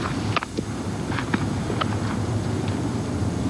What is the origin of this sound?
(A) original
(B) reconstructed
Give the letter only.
B